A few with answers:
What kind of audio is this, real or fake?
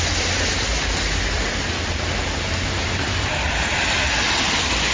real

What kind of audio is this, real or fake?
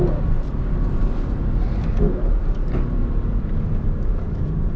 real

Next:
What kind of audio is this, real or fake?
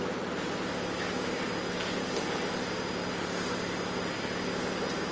real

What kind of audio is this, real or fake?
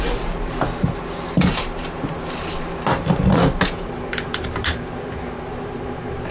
fake